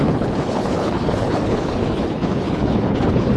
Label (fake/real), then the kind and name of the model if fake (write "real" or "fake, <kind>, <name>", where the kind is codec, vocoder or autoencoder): fake, codec, HILCodec